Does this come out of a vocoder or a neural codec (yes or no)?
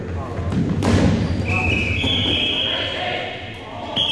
no